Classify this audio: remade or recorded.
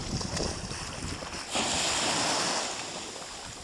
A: recorded